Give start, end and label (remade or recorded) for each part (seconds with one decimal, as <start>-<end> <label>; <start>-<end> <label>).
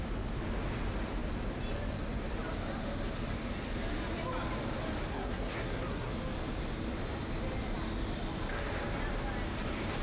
0.0-5.1 recorded; 5.1-6.1 remade; 6.1-10.0 recorded